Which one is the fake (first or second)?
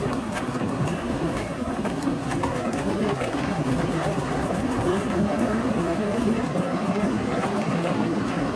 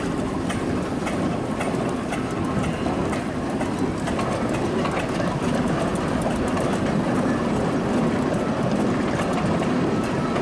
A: first